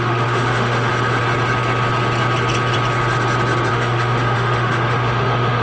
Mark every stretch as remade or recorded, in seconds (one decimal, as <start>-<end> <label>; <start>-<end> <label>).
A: 0.0-0.9 remade; 0.9-3.7 recorded; 3.7-5.6 remade